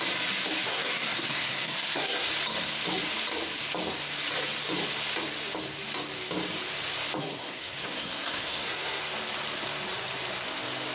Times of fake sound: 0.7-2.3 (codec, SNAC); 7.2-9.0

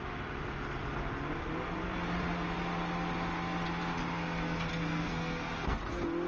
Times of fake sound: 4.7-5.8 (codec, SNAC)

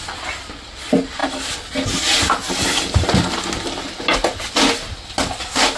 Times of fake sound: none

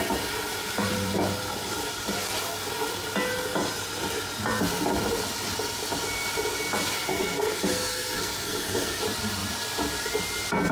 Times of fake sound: 7.1-9.0 (codec, SNAC)

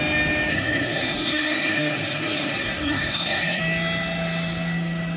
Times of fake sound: 0.5-3.6 (codec, SNAC)

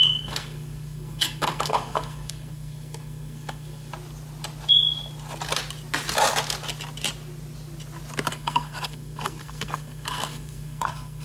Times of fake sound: 0.0-3.9 (codec, SNAC); 8.3-11.2

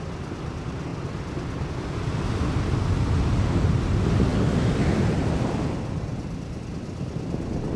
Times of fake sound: none